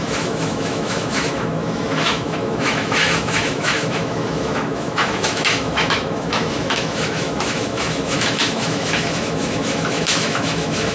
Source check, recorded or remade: remade